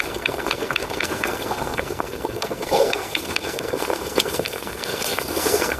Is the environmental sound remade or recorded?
remade